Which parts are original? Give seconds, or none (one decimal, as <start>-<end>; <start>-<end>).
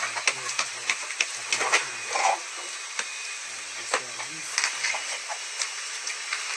0.0-3.1; 4.2-6.6